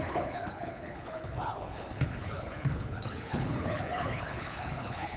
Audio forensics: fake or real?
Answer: fake